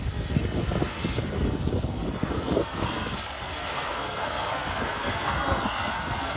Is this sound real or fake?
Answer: fake